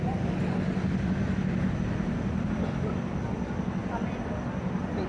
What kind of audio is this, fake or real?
real